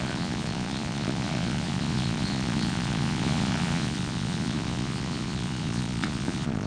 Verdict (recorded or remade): remade